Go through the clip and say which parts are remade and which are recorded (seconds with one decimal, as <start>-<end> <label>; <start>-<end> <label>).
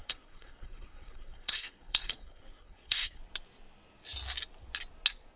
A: 0.0-3.2 remade; 3.2-5.4 recorded